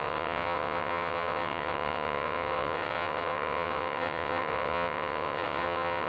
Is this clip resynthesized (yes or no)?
yes